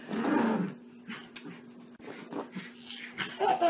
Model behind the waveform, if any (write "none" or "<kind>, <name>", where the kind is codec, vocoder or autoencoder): none